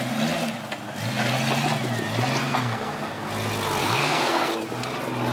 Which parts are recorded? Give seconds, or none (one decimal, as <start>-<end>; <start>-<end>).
0.0-2.4; 3.3-3.8; 4.5-5.3